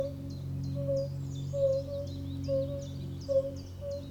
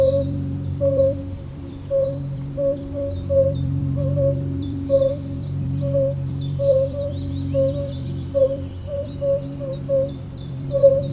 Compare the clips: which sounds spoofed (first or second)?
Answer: second